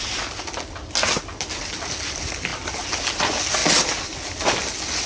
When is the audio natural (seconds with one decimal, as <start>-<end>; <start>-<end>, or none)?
0.0-5.1